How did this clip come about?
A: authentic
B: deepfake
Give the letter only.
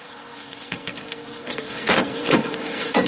B